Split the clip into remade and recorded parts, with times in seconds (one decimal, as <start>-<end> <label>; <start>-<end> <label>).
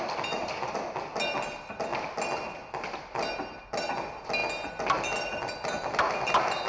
0.0-6.7 recorded